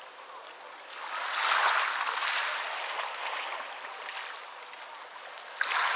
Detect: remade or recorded recorded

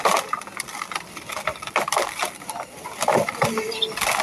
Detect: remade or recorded recorded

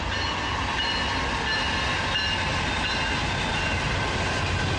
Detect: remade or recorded recorded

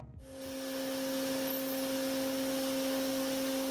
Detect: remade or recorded recorded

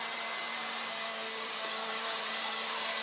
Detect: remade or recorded remade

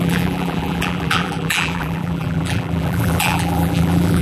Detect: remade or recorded remade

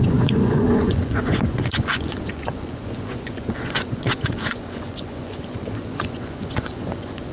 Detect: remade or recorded remade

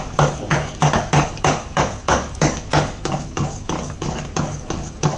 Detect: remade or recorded remade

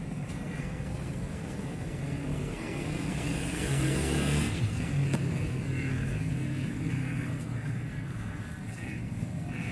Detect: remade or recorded remade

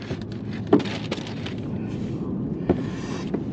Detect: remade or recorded recorded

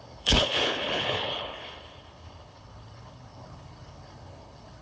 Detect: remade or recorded remade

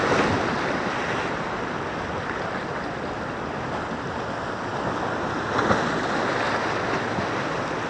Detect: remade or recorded recorded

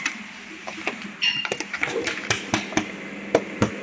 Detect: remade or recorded recorded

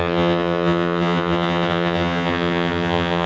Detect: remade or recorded remade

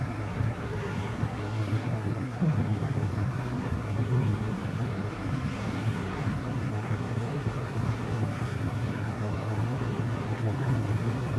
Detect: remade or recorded remade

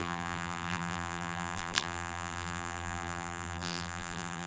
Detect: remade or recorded remade